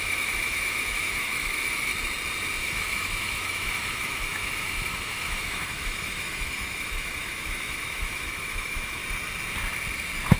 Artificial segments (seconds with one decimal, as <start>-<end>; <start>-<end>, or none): 0.0-1.9; 2.6-9.0